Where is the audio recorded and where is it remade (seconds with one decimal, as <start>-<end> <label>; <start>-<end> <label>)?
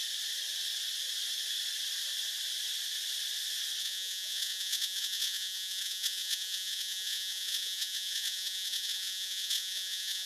0.0-3.8 recorded; 3.8-10.3 remade